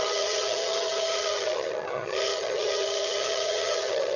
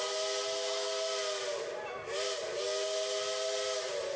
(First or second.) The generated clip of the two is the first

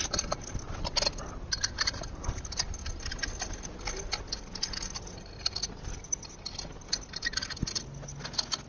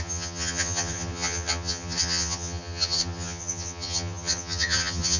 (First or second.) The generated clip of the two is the second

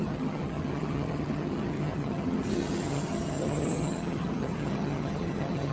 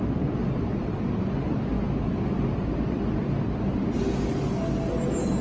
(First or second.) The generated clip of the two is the first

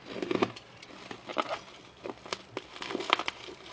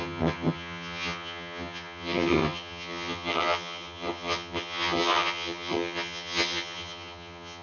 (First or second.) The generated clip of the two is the second